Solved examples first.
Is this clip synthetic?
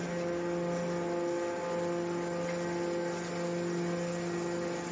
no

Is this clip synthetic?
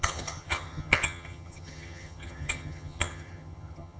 yes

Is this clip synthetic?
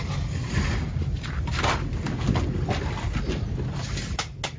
no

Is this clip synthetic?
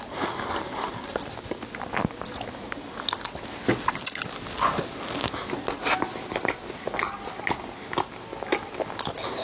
no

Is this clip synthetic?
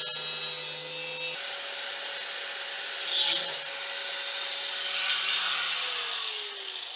no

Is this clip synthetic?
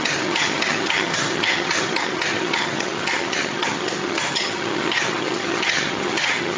yes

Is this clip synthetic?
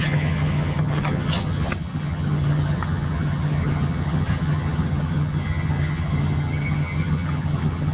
yes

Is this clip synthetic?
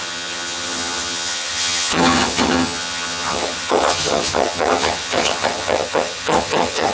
yes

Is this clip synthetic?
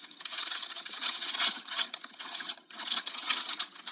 yes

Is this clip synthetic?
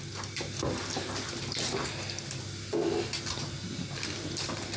no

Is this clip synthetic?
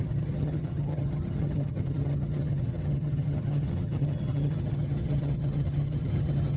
yes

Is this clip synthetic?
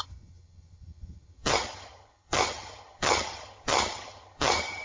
yes